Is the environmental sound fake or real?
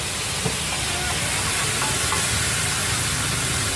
real